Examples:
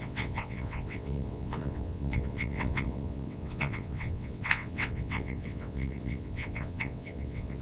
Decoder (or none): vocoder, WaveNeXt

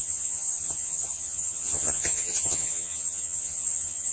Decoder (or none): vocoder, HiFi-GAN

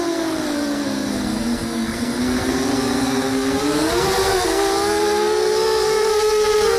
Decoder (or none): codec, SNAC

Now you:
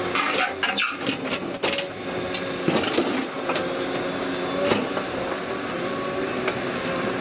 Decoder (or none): none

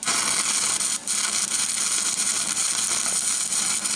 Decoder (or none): none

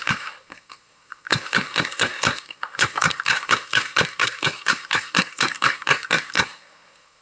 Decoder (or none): codec, SNAC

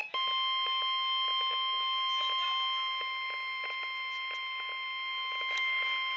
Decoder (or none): none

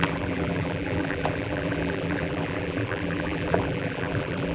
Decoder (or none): vocoder, BigVGAN v2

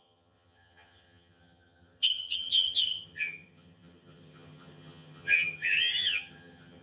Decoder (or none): vocoder, HiFi-GAN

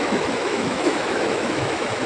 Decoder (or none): autoencoder, DAC-VAE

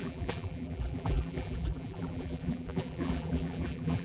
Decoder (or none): vocoder, BigVGAN v2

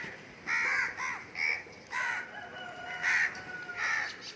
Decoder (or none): none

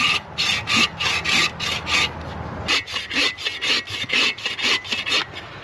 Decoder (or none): none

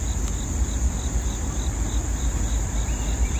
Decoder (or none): none